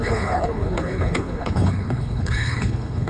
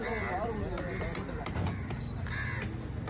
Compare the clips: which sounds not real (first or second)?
first